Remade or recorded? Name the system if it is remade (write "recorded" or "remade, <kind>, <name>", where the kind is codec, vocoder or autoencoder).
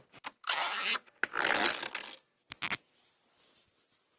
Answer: recorded